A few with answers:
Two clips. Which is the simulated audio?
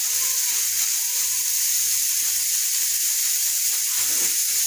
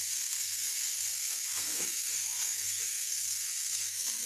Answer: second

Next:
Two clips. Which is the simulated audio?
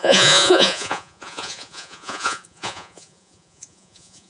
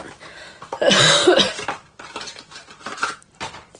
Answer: first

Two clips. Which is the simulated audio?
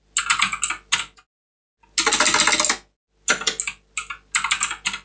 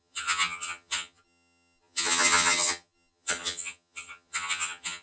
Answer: second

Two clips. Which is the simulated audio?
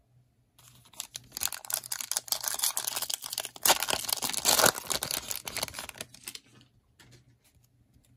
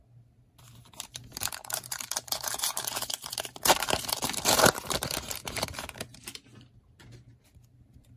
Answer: second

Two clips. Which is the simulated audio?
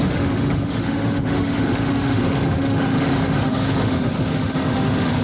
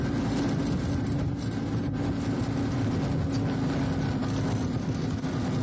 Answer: first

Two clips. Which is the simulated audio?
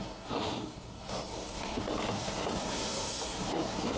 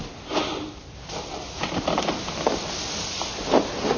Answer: first